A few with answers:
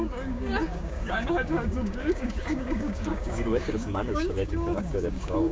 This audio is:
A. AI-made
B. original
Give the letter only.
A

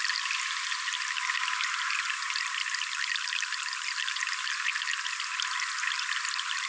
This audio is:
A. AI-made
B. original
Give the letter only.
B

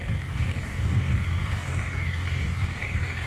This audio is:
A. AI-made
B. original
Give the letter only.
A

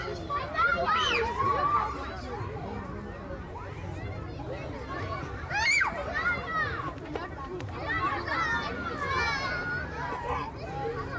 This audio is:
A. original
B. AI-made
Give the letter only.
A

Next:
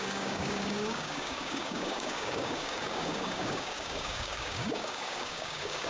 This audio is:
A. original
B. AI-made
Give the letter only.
B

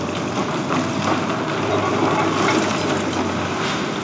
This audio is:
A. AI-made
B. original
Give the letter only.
B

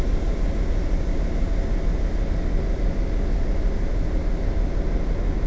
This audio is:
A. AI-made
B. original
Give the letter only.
B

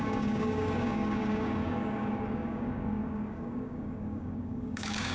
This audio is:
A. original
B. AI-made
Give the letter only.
B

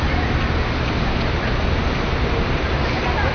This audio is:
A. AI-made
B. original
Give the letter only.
B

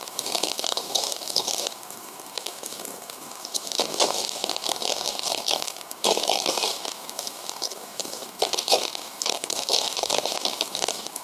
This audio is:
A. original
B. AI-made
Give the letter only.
B